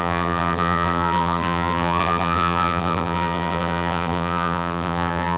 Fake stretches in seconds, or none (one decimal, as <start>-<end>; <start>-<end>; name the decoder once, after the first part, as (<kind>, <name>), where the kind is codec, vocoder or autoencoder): 0.0-5.4 (vocoder, BigVGAN v2)

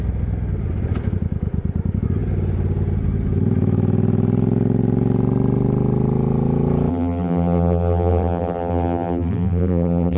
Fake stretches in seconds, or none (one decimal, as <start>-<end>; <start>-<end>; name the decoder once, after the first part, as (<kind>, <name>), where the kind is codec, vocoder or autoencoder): 6.9-10.2 (vocoder, BigVGAN v2)

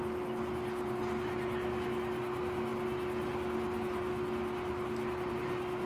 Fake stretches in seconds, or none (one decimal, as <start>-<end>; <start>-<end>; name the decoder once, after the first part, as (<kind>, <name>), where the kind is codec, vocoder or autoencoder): none